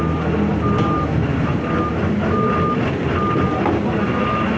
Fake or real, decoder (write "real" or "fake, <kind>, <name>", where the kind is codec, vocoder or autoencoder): real